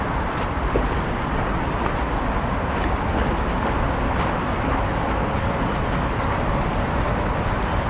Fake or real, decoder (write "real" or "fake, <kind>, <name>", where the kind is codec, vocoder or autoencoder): real